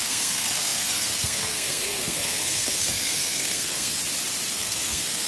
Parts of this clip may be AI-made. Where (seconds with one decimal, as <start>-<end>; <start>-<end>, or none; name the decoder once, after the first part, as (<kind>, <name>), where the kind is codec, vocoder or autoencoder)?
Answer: 0.0-4.0 (codec, SNAC); 4.5-5.3